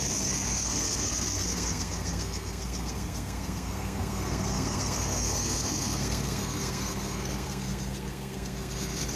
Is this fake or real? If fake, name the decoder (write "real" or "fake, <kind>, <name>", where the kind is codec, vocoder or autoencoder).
fake, codec, SNAC